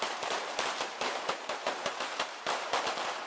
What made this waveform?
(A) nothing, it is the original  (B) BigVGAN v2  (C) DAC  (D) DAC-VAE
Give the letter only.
B